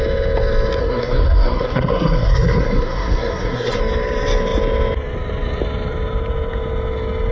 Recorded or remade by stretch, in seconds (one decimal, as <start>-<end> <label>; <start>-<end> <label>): 0.0-0.8 recorded; 0.8-3.8 remade; 3.8-7.3 recorded